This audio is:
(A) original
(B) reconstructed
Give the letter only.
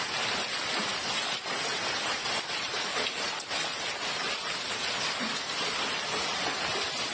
A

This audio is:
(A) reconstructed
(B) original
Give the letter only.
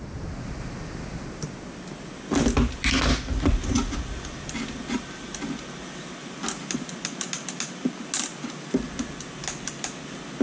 B